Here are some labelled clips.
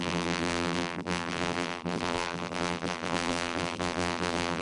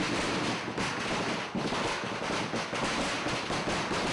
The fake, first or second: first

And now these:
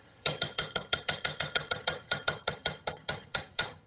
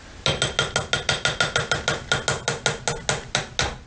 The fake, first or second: first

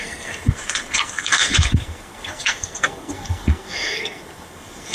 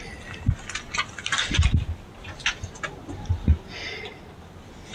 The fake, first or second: first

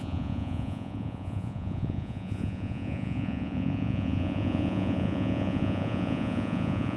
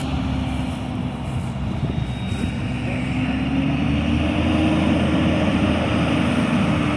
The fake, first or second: first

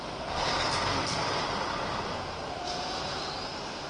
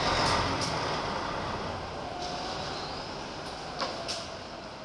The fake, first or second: first